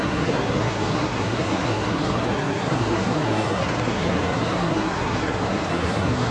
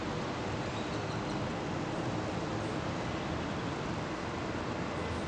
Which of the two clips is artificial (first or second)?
first